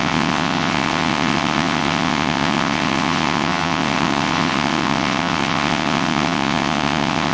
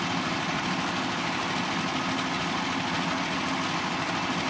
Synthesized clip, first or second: first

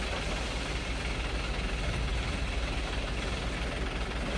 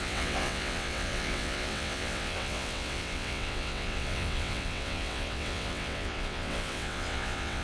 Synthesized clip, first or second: second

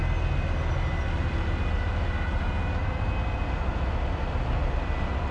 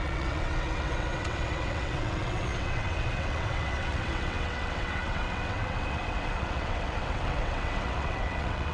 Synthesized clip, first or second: second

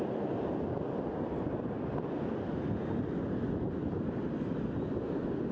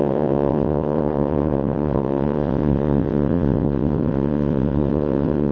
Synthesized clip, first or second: second